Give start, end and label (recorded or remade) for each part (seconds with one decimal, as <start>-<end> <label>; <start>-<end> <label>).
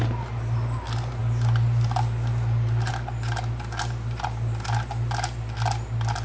0.0-6.2 recorded